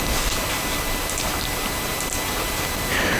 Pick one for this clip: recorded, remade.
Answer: recorded